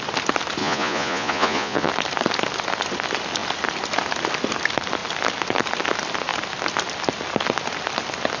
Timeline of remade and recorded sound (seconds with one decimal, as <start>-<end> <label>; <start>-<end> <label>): 0.0-0.6 recorded; 0.6-1.9 remade; 1.9-8.4 recorded